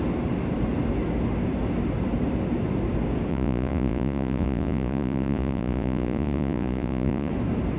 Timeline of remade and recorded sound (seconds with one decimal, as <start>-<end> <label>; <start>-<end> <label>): 0.0-3.3 recorded; 3.3-7.3 remade; 7.3-7.8 recorded